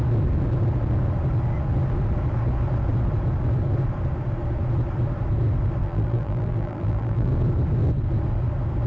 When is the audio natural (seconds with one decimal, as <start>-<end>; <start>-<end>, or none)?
0.0-5.8; 7.3-8.9